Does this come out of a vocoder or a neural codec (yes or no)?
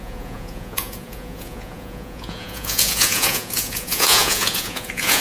yes